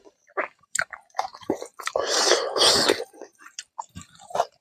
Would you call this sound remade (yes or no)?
yes